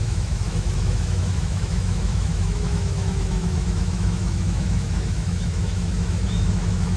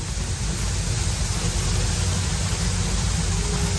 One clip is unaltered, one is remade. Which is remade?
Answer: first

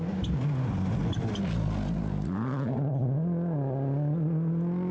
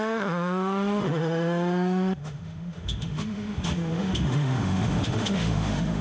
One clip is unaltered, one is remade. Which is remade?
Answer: second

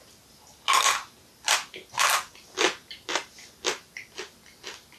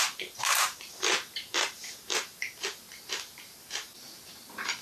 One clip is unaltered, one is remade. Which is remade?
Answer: second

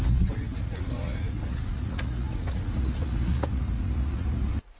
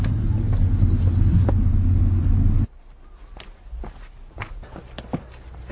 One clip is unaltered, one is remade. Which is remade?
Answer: first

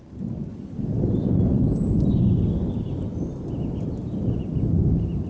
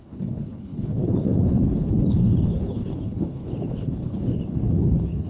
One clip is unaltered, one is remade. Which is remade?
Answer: second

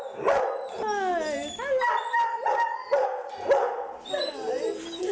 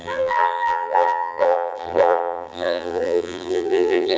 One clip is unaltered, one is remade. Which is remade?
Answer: second